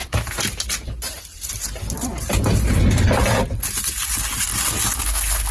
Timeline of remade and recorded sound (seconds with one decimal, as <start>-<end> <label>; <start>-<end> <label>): 0.0-3.3 remade; 3.3-5.5 recorded